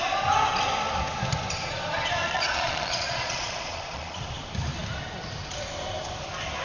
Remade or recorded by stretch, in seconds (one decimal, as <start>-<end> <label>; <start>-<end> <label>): 0.0-2.2 recorded; 2.2-4.2 remade; 4.2-6.6 recorded